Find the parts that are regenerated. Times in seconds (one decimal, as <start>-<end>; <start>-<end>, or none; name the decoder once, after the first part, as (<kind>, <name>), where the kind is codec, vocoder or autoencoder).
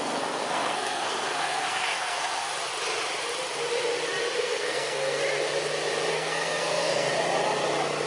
0.0-2.5 (codec, SNAC); 4.4-5.2; 6.1-7.1